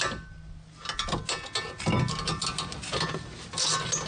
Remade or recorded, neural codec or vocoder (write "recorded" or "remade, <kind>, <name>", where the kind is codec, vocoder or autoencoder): recorded